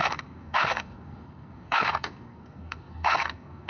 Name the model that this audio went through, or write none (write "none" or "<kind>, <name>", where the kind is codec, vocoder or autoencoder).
codec, SNAC